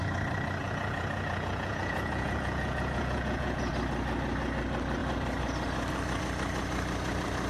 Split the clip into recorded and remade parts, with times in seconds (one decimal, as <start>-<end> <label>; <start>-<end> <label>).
0.0-0.6 recorded; 0.6-3.7 remade; 3.7-7.5 recorded